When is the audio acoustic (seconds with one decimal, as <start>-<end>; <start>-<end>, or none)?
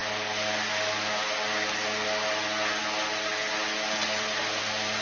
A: 0.0-5.0